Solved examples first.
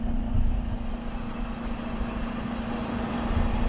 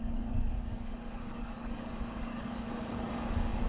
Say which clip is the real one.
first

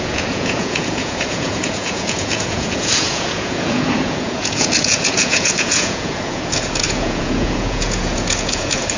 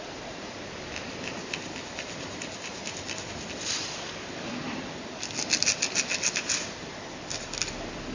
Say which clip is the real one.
second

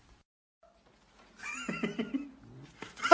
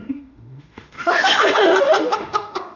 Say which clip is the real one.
first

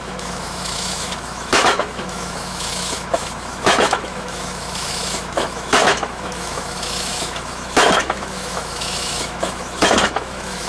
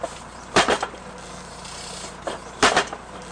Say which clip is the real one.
second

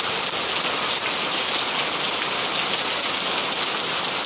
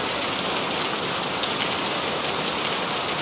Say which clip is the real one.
first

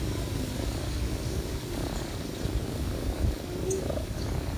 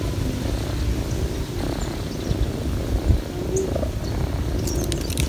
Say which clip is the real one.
second